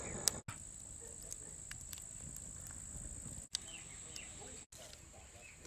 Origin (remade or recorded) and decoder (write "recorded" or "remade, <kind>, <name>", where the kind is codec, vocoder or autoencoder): recorded